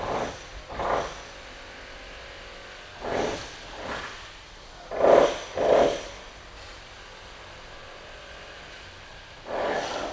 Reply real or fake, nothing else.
real